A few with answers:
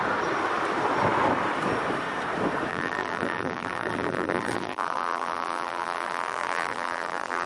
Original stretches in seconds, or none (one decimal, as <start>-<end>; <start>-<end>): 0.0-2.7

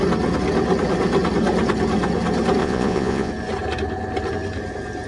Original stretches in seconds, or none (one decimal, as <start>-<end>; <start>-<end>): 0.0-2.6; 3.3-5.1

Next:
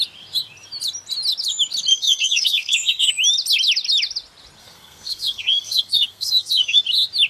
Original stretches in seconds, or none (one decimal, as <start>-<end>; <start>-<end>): 0.0-1.9; 3.1-4.6; 6.8-7.3